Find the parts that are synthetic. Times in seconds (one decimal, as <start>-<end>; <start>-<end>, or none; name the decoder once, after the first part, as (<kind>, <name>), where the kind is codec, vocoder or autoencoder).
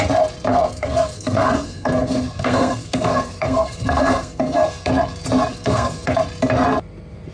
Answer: 0.5-4.9 (codec, SNAC); 5.5-6.1